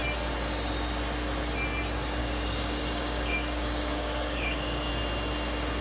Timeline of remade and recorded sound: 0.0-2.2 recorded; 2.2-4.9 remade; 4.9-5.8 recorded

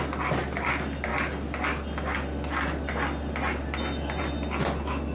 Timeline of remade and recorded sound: 0.0-5.1 recorded

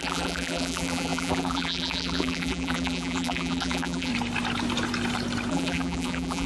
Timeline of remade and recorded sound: 0.0-4.1 remade; 4.1-5.5 recorded; 5.5-6.5 remade

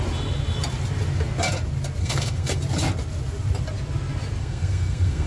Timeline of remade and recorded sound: 0.0-2.0 recorded; 2.0-2.6 remade; 2.6-4.4 recorded; 4.4-5.3 remade

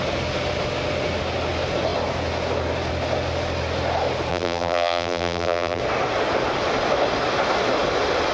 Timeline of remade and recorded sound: 0.0-4.3 recorded; 4.3-5.8 remade; 5.8-8.3 recorded

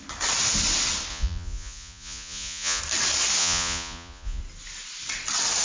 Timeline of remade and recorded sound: 0.0-1.1 recorded; 1.1-2.8 remade; 2.8-3.4 recorded; 3.4-4.4 remade; 4.4-5.6 recorded

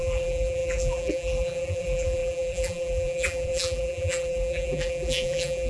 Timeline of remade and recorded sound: 0.0-5.7 remade

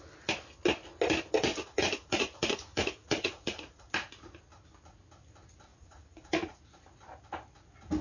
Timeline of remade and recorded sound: 0.0-1.5 recorded; 1.5-3.9 remade; 3.9-5.7 recorded; 5.7-6.6 remade; 6.6-8.0 recorded